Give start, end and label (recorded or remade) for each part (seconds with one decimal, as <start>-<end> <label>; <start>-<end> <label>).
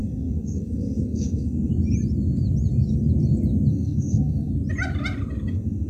0.0-1.7 remade; 1.7-3.7 recorded; 3.7-4.5 remade; 4.5-5.5 recorded; 5.5-5.9 remade